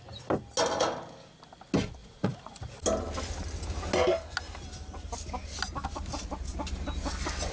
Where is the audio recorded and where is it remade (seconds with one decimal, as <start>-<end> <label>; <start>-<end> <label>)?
0.0-2.0 recorded; 2.0-2.8 remade; 2.8-7.5 recorded